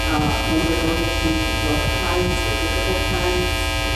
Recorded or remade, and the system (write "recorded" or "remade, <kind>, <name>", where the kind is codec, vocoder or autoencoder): recorded